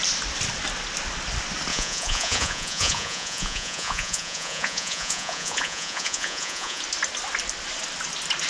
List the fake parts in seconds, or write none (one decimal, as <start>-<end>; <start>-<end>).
1.7-6.8

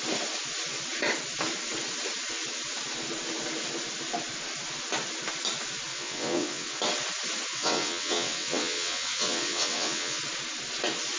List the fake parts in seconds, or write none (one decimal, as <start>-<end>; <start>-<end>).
5.9-6.8; 7.5-10.2

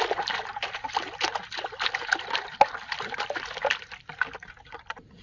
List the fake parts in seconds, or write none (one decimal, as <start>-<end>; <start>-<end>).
none